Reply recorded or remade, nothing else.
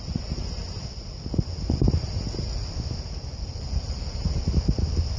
recorded